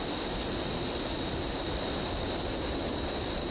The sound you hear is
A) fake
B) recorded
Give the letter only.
B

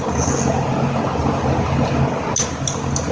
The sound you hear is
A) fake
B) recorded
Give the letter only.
B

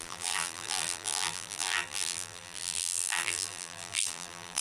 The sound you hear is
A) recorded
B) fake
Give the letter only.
B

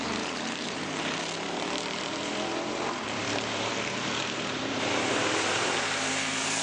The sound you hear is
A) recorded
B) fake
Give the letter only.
B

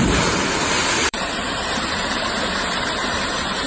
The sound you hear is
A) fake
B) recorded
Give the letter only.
A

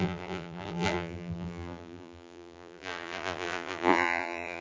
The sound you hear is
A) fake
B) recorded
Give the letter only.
A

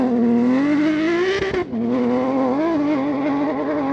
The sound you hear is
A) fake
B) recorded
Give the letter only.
B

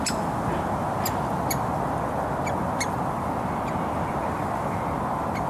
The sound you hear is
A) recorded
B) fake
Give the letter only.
A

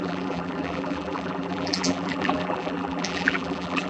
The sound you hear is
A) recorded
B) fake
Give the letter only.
B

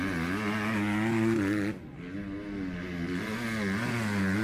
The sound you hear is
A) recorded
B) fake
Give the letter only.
A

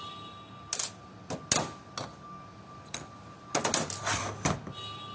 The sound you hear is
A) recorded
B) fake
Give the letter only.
A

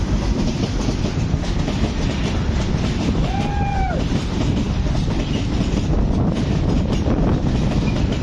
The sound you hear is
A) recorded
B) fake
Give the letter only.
B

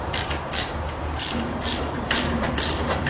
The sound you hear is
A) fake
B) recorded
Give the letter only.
A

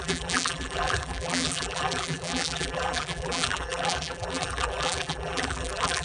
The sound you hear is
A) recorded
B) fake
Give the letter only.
B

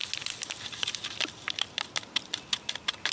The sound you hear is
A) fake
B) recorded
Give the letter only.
B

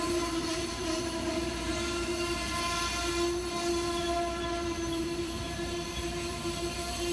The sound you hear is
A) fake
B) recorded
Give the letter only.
A